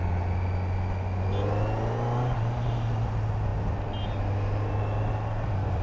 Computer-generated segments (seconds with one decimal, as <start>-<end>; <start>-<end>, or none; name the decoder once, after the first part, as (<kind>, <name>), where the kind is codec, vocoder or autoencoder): none